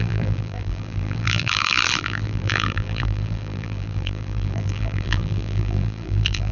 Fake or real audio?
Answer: fake